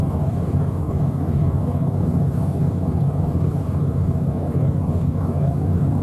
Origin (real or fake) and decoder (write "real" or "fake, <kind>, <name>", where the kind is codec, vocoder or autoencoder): fake, codec, DAC